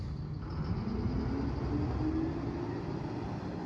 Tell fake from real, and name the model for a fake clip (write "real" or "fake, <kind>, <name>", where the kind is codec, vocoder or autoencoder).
real